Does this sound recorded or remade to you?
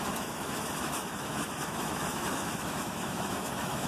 remade